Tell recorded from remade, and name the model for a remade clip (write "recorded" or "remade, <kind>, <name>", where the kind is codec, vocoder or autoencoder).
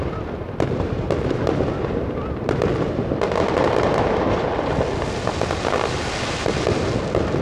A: recorded